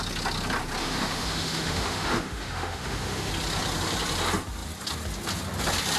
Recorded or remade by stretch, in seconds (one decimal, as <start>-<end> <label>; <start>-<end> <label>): 0.0-0.8 recorded; 0.8-3.3 remade; 3.3-6.0 recorded